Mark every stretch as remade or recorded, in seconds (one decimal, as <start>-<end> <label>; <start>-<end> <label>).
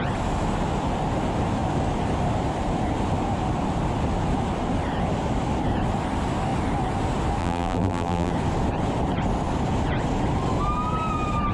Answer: 0.0-7.4 recorded; 7.4-8.3 remade; 8.3-11.5 recorded